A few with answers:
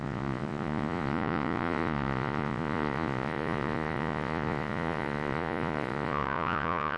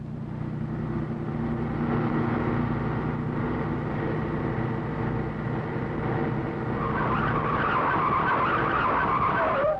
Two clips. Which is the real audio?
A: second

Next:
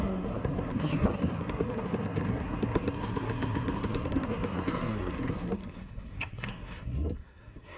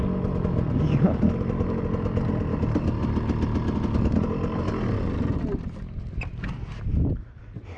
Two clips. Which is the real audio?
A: second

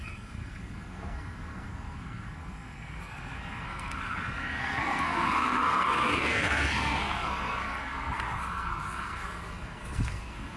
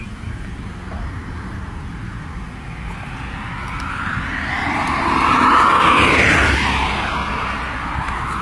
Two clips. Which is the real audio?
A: second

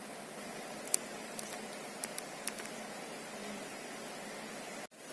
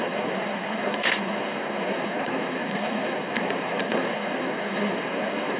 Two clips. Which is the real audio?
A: first